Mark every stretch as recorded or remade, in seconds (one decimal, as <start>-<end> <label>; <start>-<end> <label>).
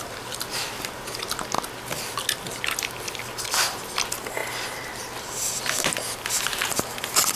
0.0-7.4 recorded